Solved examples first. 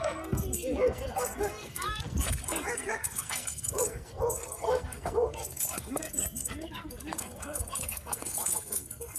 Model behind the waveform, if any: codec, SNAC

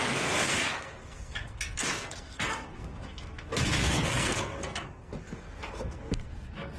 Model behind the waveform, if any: codec, SNAC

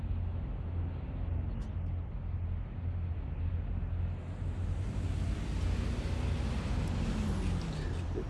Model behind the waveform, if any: none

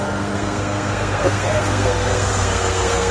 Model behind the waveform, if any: codec, SNAC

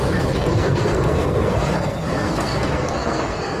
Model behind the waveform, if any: codec, SNAC